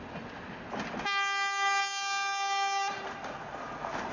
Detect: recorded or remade recorded